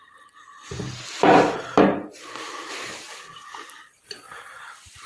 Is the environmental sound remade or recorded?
remade